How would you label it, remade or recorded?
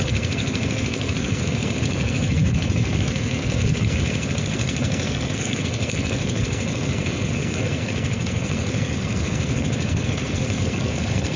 remade